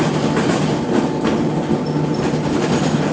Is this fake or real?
real